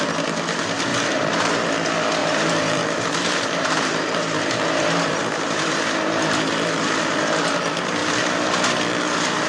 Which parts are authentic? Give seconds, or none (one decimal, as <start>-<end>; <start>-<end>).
0.0-0.9; 1.5-2.2; 7.2-9.5